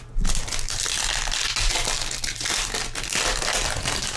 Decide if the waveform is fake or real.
real